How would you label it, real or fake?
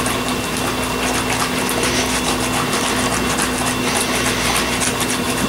real